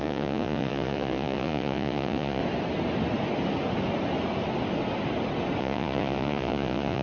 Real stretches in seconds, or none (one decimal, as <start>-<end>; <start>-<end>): 2.4-5.6